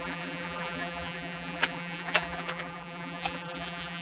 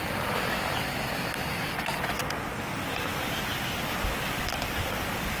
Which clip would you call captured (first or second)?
second